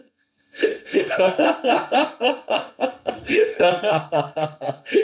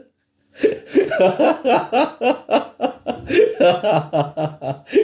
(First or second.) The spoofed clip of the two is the first